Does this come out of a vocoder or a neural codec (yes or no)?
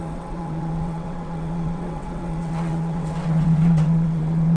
yes